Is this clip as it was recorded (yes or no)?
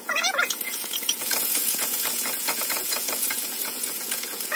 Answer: no